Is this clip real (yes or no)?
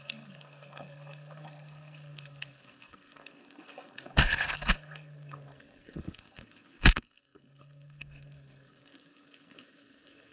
no